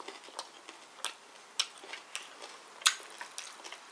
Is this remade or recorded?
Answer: recorded